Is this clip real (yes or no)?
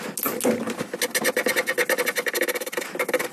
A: yes